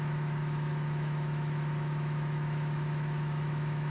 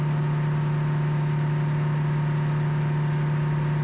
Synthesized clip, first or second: first